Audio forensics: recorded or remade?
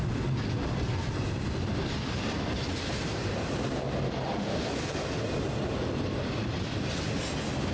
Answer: recorded